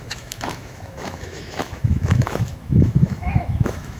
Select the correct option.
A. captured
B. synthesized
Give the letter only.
B